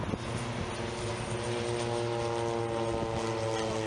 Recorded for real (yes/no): yes